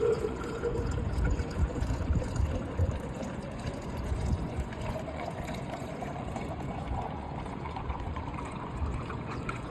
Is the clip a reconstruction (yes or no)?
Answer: yes